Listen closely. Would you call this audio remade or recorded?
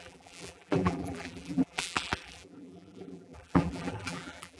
remade